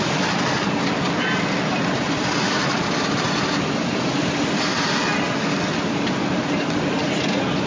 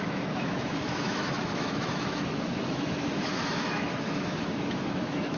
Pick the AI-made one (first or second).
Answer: second